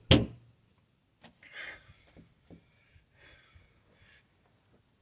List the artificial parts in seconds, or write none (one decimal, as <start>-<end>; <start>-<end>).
none